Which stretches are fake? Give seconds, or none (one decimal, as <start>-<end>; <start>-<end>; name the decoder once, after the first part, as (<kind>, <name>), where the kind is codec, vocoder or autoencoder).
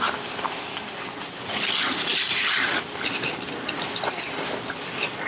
none